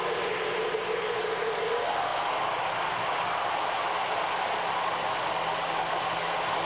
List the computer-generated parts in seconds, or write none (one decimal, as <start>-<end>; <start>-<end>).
none